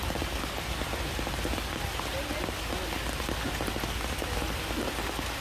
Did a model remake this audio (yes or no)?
no